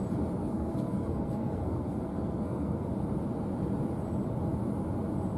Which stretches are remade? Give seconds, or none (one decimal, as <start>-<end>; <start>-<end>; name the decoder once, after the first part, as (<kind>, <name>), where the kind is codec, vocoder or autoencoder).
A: 0.4-2.9 (codec, SNAC)